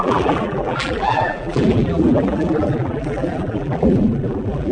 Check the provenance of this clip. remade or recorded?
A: remade